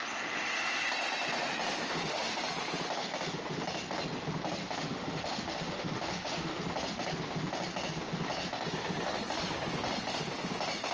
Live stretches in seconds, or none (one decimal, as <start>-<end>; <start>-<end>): 0.0-1.9; 2.4-4.6; 6.6-10.9